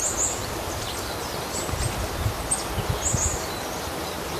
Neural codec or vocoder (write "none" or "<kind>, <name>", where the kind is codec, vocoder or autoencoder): none